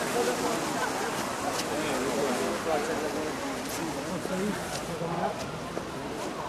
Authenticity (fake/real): real